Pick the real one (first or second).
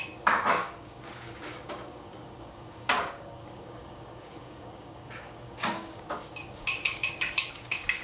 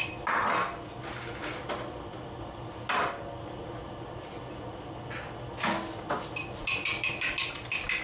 second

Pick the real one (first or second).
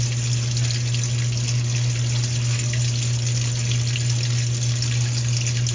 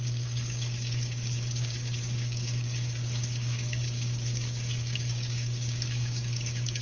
first